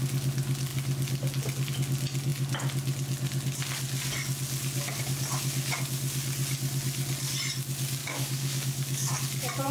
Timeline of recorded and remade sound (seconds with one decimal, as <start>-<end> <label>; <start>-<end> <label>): 0.0-8.0 recorded; 8.0-9.1 remade; 9.1-9.7 recorded